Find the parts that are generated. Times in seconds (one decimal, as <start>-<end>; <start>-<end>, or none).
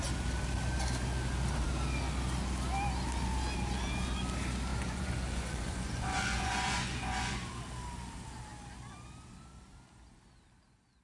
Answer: 4.7-7.5